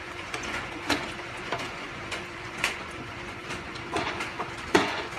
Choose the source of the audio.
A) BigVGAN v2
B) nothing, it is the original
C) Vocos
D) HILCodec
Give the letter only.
C